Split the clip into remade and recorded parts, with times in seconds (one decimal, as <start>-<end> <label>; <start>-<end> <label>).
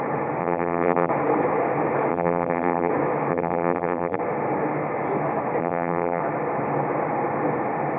0.0-0.4 recorded; 0.4-1.1 remade; 1.1-2.1 recorded; 2.1-2.9 remade; 2.9-3.3 recorded; 3.3-4.2 remade; 4.2-5.6 recorded; 5.6-6.2 remade; 6.2-8.0 recorded